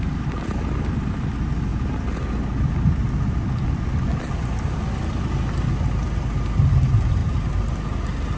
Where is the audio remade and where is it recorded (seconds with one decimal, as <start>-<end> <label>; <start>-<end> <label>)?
0.0-8.4 recorded